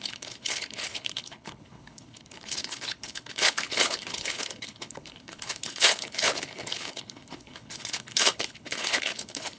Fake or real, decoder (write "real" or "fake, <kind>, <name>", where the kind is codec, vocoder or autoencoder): fake, codec, HILCodec